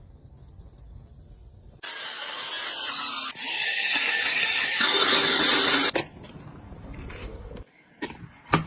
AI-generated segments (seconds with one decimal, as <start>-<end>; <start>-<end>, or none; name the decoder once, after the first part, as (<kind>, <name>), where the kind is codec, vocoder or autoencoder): 1.9-2.5 (codec, DAC); 3.5-5.4; 7.2-7.9

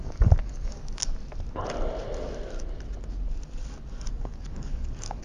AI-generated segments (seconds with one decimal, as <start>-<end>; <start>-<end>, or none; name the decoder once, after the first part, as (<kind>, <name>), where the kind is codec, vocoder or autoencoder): 0.0-1.0 (codec, DAC); 4.1-5.2